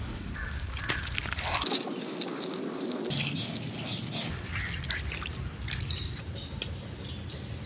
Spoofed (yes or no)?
no